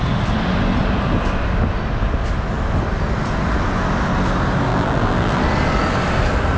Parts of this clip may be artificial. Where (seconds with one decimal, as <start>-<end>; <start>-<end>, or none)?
4.7-5.4